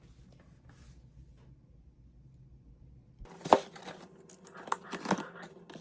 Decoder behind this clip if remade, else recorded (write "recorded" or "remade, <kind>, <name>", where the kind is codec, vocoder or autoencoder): recorded